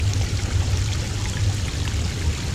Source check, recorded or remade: recorded